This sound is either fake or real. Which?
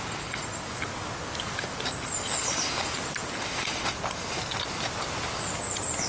real